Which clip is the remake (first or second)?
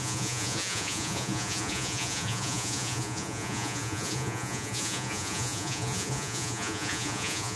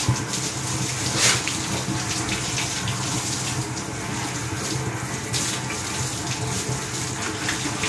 first